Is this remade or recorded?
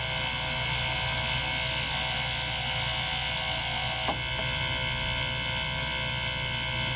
recorded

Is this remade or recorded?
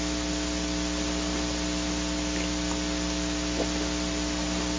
recorded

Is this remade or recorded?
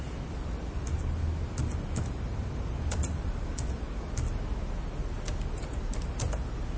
recorded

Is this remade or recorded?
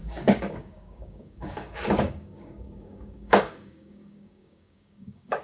remade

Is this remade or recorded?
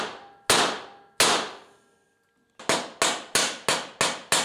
recorded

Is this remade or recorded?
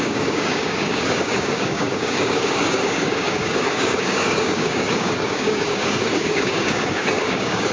remade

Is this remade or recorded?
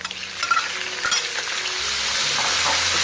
recorded